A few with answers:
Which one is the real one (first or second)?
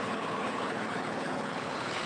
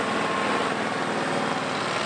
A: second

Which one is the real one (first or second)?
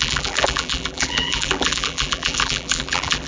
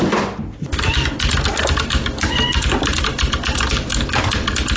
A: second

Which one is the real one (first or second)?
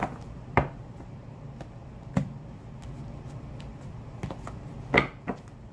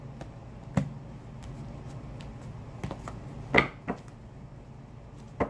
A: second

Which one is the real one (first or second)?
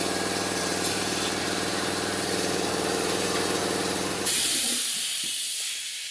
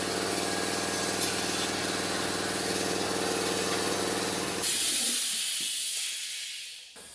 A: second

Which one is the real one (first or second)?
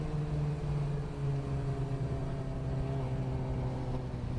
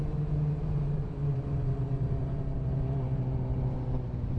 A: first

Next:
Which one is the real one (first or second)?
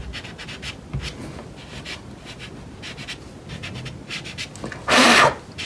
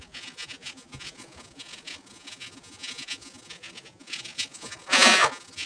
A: first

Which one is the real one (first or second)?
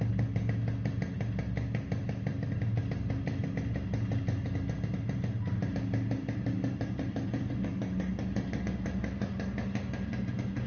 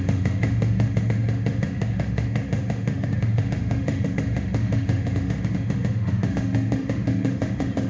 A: first